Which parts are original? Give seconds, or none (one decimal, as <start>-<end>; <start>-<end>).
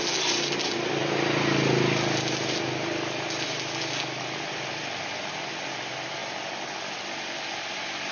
0.0-8.1